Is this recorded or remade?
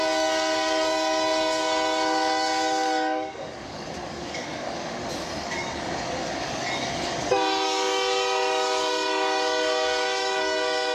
remade